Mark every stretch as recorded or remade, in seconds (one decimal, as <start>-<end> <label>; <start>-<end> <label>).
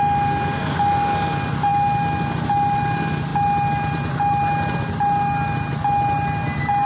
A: 0.0-6.9 recorded